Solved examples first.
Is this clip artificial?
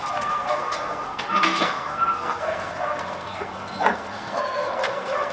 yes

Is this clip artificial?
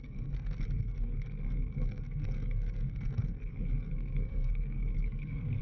yes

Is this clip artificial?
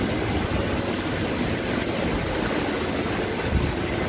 no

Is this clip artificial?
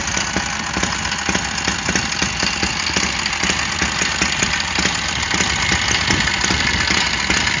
no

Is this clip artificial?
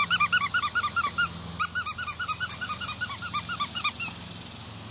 no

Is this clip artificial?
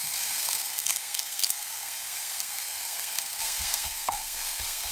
yes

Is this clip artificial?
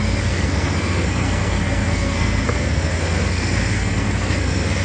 yes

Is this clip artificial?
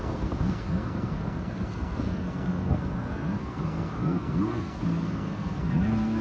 yes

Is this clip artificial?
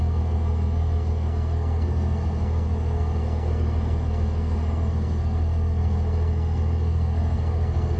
yes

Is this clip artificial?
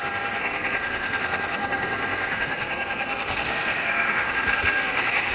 yes